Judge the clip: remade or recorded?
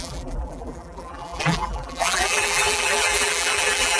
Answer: remade